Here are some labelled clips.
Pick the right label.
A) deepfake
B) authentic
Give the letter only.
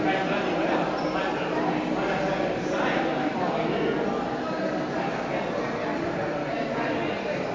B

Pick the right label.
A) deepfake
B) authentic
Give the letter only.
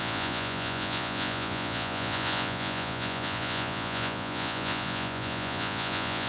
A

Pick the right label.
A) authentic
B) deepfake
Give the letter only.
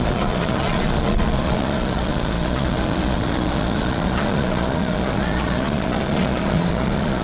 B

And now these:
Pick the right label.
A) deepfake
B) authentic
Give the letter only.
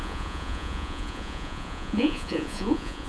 A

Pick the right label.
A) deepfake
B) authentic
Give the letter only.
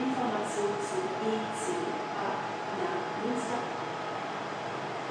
B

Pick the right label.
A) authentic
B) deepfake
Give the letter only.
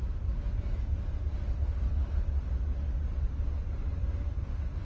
A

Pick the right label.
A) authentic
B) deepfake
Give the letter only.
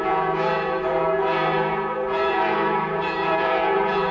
B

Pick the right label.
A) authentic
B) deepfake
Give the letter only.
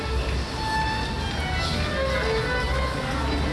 A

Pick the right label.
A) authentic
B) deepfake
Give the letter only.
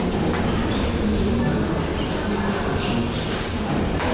A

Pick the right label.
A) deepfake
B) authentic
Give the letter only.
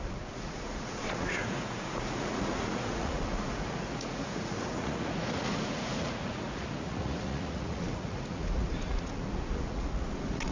A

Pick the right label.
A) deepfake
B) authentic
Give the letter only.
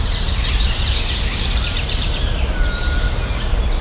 B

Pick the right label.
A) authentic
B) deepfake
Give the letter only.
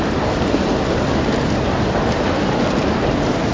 A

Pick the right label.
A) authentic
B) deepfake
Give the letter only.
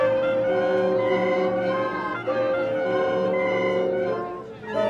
A